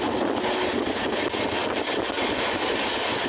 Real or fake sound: real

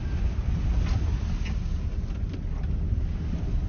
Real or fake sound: real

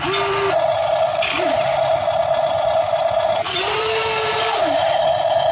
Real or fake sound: real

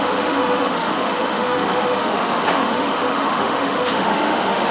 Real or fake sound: fake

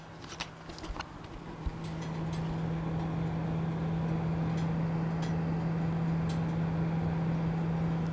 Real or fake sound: real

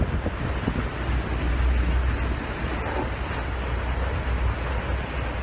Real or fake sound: real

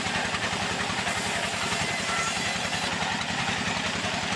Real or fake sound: fake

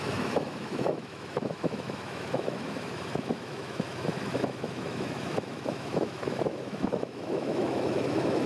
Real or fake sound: fake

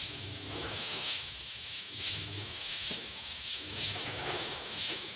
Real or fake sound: fake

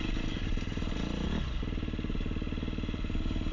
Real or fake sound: real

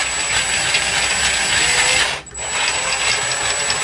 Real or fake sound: real